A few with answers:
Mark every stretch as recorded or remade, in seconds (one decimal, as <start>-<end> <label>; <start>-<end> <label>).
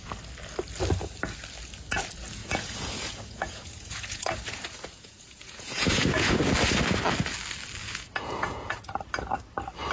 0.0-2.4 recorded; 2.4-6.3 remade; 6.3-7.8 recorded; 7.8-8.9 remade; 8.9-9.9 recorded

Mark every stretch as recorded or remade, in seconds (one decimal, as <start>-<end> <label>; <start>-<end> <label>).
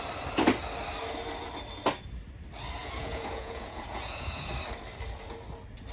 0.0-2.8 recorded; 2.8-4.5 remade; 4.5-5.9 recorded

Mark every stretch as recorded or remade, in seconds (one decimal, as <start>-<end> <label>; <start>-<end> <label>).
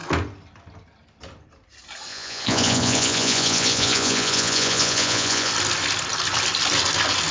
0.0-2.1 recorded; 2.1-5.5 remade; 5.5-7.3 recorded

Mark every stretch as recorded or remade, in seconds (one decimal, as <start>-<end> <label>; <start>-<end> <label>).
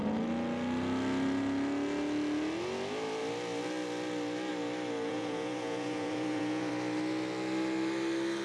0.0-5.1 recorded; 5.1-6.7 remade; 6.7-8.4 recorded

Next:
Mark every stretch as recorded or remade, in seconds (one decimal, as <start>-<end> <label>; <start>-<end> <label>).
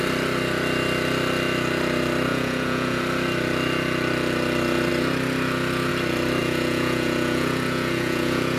0.0-2.3 recorded; 2.3-3.0 remade; 3.0-6.4 recorded; 6.4-8.6 remade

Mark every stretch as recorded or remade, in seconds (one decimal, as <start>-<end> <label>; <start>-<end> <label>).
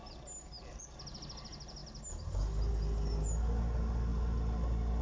0.0-5.0 recorded